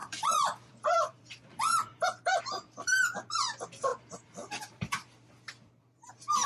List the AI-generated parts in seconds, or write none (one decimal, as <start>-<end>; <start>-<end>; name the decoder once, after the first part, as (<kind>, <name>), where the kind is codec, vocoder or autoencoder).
0.0-2.4 (vocoder, BigVGAN v2); 3.9-6.1